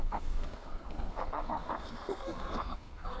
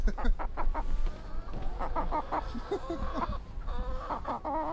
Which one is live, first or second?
second